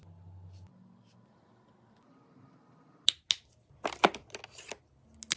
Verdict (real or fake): real